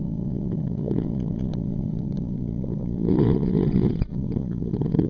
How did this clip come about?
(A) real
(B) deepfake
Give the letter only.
B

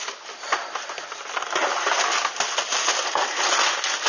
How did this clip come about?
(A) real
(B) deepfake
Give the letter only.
A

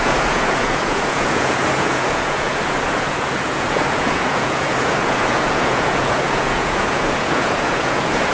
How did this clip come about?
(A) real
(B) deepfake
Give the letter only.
B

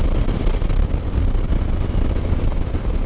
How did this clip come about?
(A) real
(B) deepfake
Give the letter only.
A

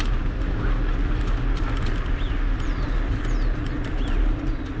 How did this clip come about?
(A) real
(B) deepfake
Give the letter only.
A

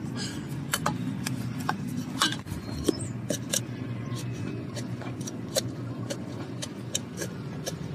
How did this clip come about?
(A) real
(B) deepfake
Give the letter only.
B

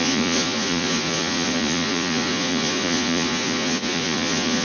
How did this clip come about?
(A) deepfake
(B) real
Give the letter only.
A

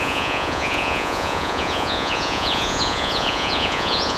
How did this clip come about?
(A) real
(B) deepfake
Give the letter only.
B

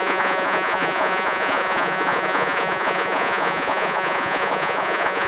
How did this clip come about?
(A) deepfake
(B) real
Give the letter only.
A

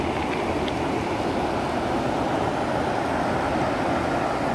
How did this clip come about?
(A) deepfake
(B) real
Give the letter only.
B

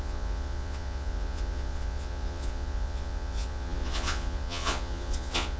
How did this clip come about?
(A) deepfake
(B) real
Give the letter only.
A